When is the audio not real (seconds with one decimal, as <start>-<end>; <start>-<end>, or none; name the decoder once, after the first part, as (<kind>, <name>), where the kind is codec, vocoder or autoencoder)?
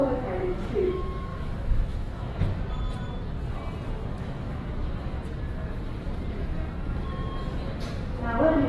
0.0-0.8 (autoencoder, DAC-VAE); 1.3-2.4; 4.1-4.9